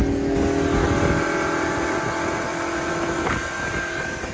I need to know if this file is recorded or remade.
recorded